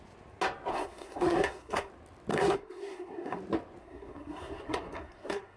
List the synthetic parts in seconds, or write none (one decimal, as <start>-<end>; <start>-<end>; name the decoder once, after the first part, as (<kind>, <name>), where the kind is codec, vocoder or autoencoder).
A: 0.7-1.9 (codec, SNAC); 2.3-3.4; 3.8-5.6